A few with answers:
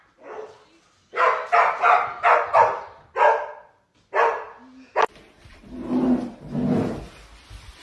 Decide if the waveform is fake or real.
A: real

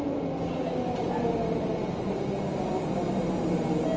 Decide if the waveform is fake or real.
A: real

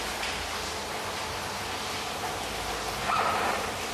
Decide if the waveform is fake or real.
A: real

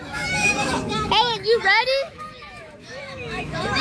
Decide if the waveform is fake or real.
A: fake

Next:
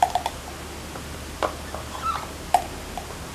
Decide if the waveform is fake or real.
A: real